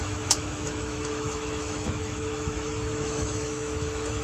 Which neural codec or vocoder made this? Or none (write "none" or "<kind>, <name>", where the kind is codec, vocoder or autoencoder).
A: autoencoder, DAC-VAE